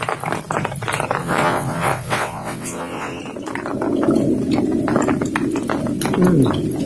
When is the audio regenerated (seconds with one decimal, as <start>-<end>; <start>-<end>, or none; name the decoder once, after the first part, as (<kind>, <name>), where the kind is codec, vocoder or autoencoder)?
1.2-3.2 (vocoder, WaveNeXt)